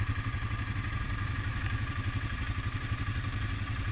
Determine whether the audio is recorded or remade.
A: remade